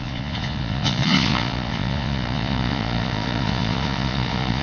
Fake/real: fake